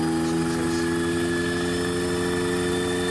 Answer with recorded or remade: recorded